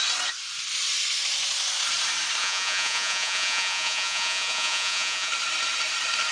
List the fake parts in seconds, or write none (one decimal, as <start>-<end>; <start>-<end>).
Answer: 2.4-5.3